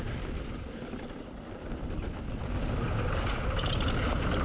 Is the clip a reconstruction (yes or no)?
no